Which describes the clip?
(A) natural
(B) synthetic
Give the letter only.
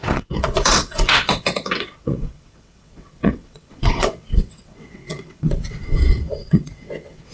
B